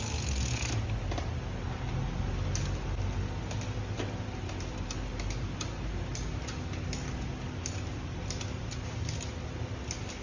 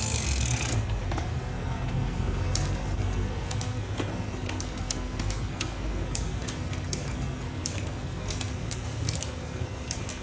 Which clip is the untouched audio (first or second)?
first